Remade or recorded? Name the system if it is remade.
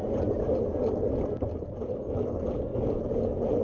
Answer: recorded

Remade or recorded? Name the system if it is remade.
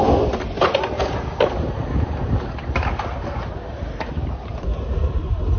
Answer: recorded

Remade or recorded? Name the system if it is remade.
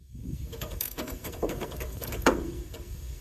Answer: remade, codec, SNAC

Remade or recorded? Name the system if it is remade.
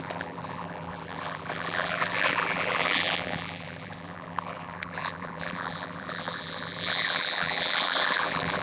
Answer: remade, vocoder, BigVGAN v2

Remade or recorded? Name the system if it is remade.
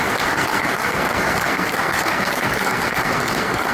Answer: remade, codec, SNAC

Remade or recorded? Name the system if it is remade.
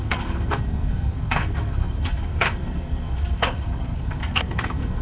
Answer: remade, codec, SNAC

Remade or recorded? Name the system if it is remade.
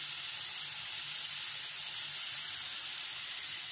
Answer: recorded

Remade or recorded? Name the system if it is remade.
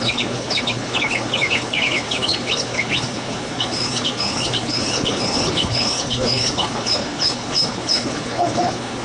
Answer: remade, codec, HILCodec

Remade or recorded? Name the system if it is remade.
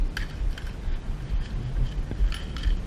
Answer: recorded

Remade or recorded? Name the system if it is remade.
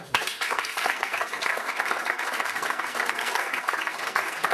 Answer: remade, codec, SNAC